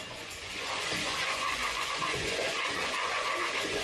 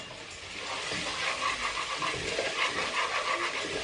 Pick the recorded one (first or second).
second